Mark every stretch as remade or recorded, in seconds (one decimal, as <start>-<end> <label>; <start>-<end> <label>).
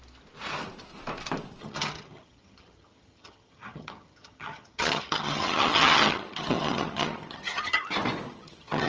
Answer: 0.0-1.6 recorded; 1.6-7.8 remade; 7.8-8.3 recorded; 8.3-8.9 remade